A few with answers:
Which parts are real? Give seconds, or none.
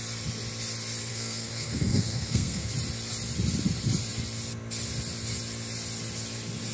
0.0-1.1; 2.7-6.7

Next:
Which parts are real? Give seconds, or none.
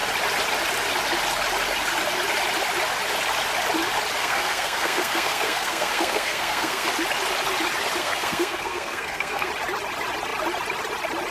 0.0-4.2; 6.9-8.0; 9.5-11.3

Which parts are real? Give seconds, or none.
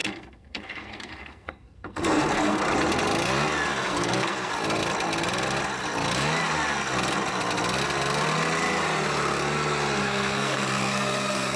2.6-3.8; 4.5-10.0